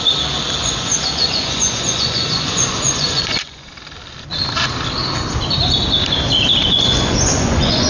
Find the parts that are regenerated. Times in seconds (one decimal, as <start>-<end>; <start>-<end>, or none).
0.6-3.7; 6.6-7.9